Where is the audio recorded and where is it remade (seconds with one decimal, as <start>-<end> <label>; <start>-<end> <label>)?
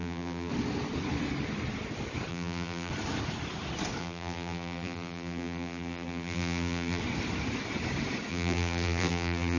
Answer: 0.0-0.5 remade; 0.5-2.3 recorded; 2.3-2.9 remade; 2.9-4.0 recorded; 4.0-7.0 remade; 7.0-8.3 recorded; 8.3-9.6 remade